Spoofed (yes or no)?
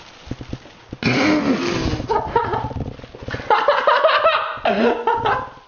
no